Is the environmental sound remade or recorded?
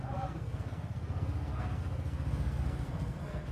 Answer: remade